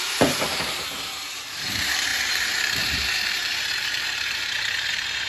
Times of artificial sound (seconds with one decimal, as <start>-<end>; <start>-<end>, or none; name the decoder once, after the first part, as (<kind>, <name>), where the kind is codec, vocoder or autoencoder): 0.0-5.3 (vocoder, BigVGAN v2)

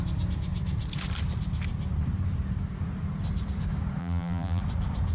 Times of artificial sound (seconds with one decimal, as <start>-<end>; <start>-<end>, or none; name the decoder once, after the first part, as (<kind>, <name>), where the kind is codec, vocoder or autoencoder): 4.0-4.6 (vocoder, BigVGAN v2)

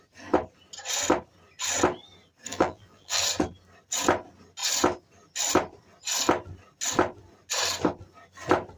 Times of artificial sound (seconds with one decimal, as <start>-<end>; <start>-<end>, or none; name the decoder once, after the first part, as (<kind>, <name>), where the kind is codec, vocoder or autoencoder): 2.5-3.2 (vocoder, BigVGAN v2)